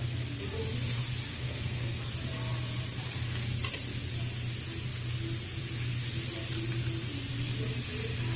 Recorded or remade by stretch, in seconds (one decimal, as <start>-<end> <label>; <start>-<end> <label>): 0.0-1.3 recorded; 1.3-2.0 remade; 2.0-8.4 recorded